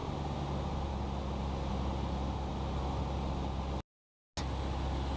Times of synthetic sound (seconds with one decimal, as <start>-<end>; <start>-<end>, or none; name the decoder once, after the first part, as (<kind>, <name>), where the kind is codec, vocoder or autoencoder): none